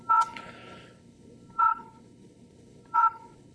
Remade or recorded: remade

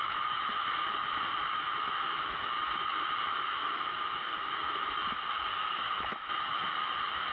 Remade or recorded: remade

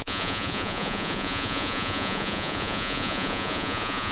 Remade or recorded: remade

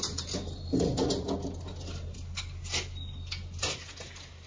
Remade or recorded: recorded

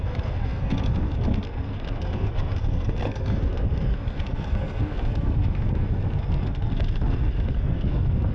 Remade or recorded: remade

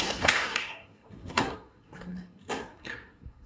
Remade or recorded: remade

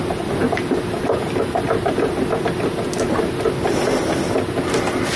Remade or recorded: recorded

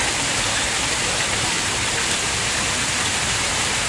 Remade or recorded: remade